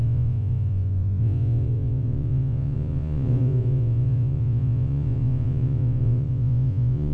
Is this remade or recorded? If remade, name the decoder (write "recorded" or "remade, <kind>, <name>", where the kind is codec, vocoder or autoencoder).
remade, vocoder, Vocos